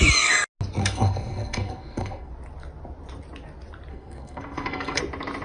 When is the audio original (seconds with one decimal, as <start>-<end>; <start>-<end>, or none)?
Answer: 0.0-0.8; 2.3-3.9; 5.0-5.4